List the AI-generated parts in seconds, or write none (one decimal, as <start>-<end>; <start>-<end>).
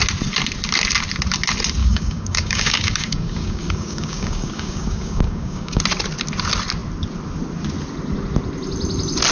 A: 1.8-5.8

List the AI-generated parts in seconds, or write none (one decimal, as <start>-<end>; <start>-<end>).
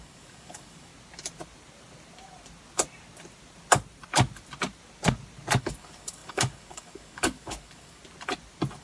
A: 0.0-0.9; 5.6-8.0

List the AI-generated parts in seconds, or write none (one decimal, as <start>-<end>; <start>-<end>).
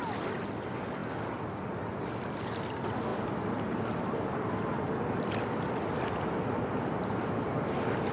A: none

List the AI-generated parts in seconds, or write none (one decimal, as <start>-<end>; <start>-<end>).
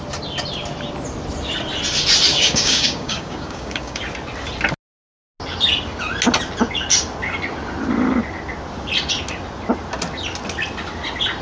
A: 2.3-4.0